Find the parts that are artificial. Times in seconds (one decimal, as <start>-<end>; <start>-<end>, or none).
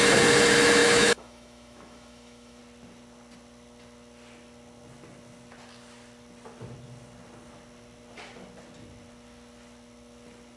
0.8-2.6